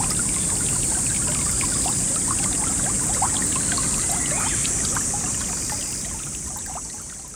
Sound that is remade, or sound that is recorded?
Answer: recorded